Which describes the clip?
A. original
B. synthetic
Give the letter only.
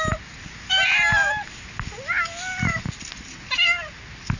A